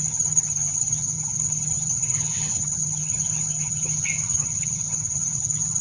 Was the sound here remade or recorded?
remade